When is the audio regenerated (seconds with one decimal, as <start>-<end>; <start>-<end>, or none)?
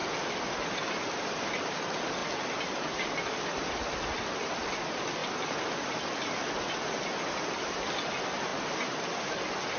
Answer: none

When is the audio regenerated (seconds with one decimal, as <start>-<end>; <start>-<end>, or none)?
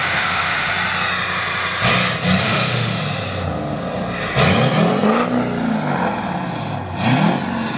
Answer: 0.0-0.7; 2.4-3.0